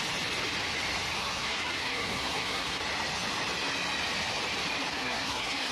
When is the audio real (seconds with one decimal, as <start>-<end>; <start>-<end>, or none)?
0.0-1.2; 2.8-4.9